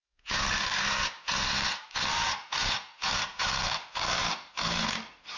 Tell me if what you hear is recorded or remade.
recorded